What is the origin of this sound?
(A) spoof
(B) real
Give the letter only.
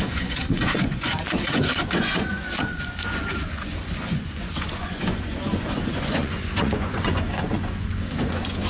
A